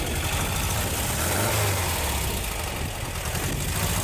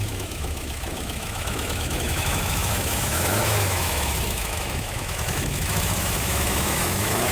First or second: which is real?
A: first